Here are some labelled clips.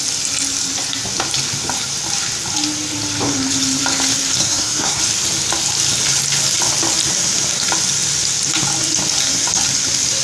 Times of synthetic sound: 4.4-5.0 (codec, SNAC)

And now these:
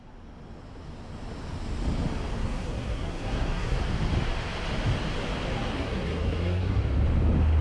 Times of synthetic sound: 2.4-3.8 (codec, SNAC); 5.7-6.8